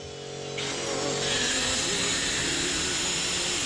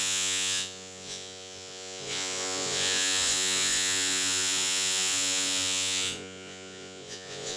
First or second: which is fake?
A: second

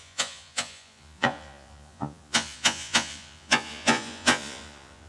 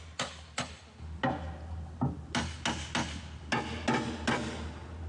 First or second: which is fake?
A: first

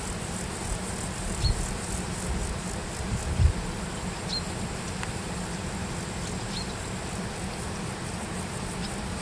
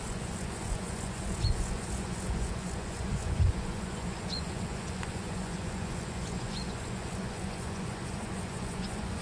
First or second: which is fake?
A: second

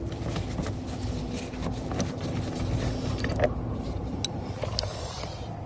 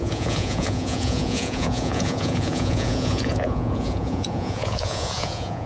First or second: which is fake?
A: second